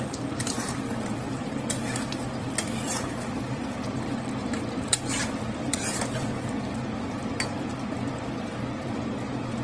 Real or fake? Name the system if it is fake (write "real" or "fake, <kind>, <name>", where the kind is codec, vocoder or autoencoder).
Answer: fake, vocoder, BigVGAN v2